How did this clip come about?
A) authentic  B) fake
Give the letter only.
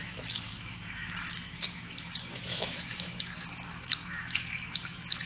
B